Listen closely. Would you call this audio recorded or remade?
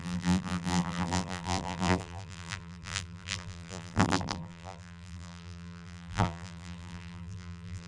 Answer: remade